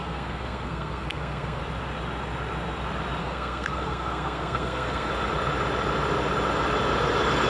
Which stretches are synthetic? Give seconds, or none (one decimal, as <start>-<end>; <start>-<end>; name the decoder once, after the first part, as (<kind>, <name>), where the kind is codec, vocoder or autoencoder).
0.0-1.6 (codec, SNAC); 3.2-5.1